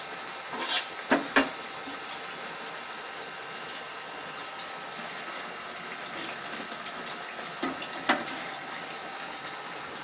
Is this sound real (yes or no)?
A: yes